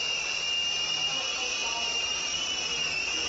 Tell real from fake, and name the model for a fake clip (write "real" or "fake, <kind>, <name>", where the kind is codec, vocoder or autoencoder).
real